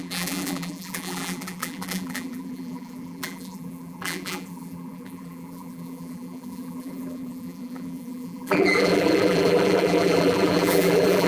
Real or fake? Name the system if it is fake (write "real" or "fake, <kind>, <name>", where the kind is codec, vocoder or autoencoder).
fake, vocoder, BigVGAN v2